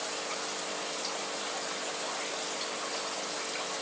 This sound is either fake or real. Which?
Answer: real